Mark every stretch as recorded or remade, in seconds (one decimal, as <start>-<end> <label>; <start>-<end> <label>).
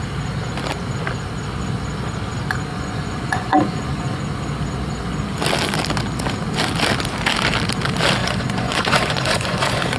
0.0-2.7 recorded; 2.7-4.2 remade; 4.2-8.2 recorded; 8.2-10.0 remade